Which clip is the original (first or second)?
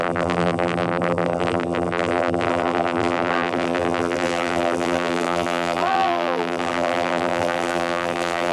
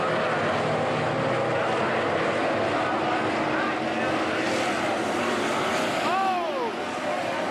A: second